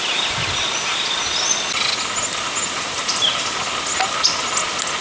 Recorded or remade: recorded